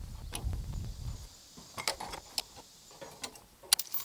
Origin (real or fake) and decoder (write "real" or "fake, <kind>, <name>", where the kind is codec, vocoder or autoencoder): real